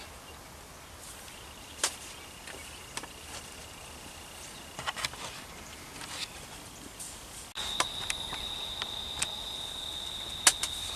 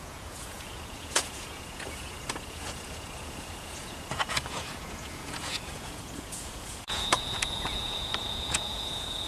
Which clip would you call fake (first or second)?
second